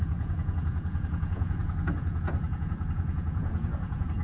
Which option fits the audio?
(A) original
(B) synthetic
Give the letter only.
B